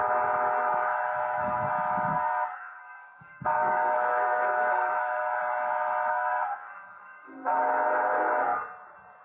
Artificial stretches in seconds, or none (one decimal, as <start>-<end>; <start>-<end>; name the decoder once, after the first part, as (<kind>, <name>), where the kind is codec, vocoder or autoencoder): 1.2-1.7 (codec, SNAC); 2.1-5.4; 6.1-7.6